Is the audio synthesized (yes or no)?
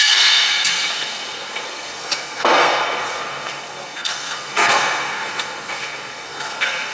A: yes